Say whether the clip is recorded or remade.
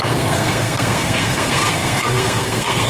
remade